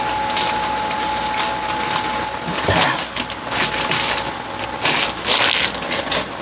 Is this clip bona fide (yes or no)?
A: yes